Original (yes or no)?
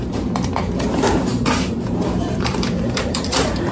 no